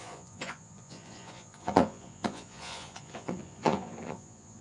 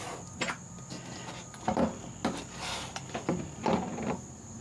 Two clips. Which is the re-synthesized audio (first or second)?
first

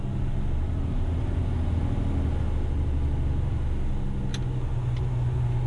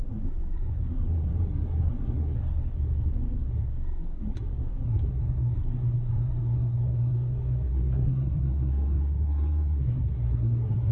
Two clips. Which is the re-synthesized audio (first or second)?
second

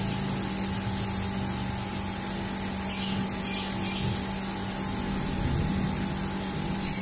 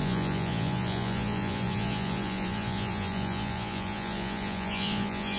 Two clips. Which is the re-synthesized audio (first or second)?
second